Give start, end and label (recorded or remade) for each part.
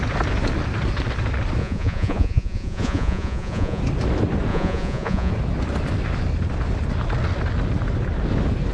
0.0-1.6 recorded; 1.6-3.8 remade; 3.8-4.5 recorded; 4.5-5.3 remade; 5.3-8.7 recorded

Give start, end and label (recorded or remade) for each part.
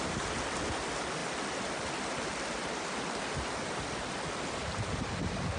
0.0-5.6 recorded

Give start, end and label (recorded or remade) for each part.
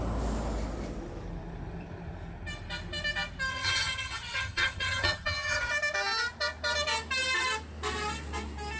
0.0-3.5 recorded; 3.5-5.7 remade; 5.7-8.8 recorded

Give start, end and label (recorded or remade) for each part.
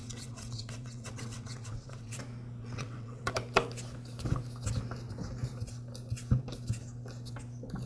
0.0-2.2 remade; 2.2-2.6 recorded; 2.6-3.3 remade; 3.3-7.9 recorded